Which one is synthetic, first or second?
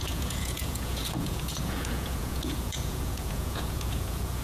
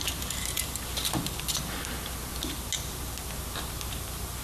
first